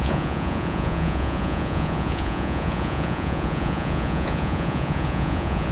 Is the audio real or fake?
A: fake